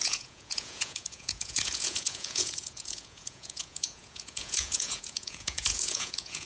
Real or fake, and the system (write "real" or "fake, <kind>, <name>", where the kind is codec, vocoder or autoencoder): fake, vocoder, Vocos